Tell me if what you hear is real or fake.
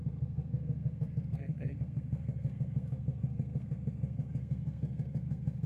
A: fake